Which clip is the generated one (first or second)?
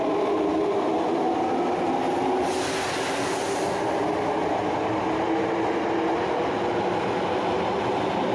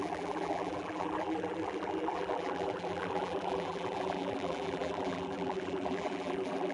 second